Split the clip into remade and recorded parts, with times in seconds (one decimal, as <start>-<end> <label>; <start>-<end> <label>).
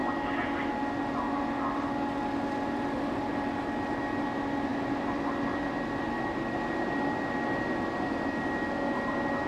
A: 0.0-9.5 recorded